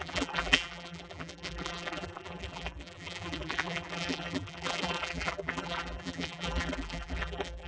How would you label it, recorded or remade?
remade